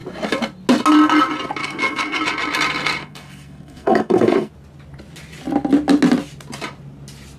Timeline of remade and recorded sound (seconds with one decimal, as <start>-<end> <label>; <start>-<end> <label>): 0.0-1.6 recorded; 1.6-2.2 remade; 2.2-3.0 recorded; 3.0-4.5 remade; 4.5-7.4 recorded